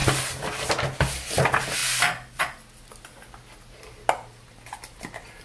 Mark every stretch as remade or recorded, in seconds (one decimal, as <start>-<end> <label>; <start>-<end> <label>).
0.0-5.4 recorded